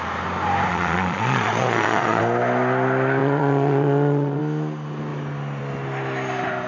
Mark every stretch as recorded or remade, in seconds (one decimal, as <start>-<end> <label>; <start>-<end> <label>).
0.0-0.7 recorded; 0.7-2.2 remade; 2.2-3.2 recorded; 3.2-4.4 remade; 4.4-6.7 recorded